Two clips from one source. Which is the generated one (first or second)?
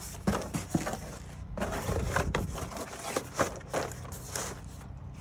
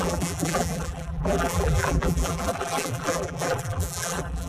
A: second